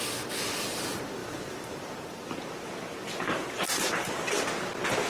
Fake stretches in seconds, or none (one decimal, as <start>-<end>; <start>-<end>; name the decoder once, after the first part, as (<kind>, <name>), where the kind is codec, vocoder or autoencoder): 1.2-4.3 (vocoder, BigVGAN v2)